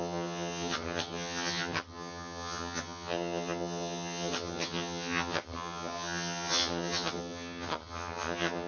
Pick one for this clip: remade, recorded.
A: remade